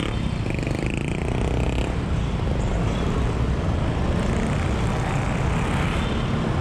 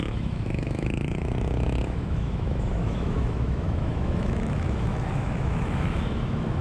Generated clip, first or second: second